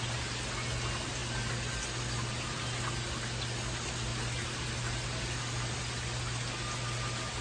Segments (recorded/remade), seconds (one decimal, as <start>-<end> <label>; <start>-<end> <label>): 0.0-7.4 recorded